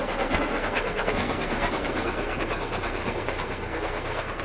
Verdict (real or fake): fake